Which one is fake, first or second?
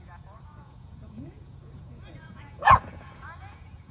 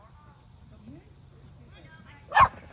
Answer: first